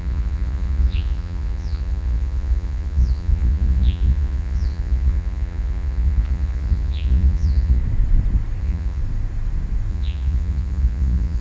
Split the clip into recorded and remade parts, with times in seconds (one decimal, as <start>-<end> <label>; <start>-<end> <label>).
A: 0.0-7.8 remade; 7.8-8.6 recorded; 8.6-9.0 remade; 9.0-9.9 recorded; 9.9-11.4 remade

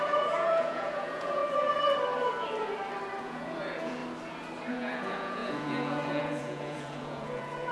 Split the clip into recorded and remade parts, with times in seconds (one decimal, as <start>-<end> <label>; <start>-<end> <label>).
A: 0.0-1.4 remade; 1.4-3.2 recorded; 3.2-4.0 remade; 4.0-4.7 recorded; 4.7-7.7 remade